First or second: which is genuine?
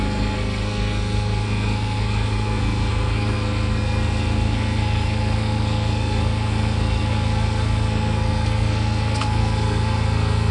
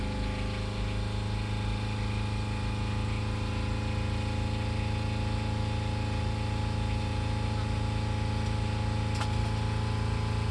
second